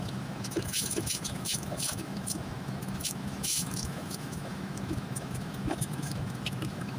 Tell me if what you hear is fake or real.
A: fake